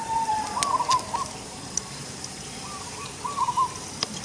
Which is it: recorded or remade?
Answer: recorded